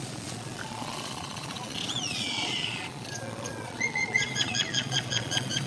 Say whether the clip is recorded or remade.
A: remade